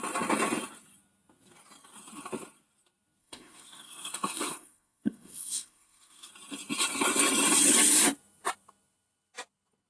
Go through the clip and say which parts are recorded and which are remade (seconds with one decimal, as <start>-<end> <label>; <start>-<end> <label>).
0.0-3.2 recorded; 3.2-6.3 remade; 6.3-9.9 recorded